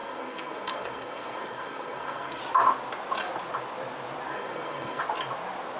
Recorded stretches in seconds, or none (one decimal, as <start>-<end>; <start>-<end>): 2.4-4.3; 5.0-5.8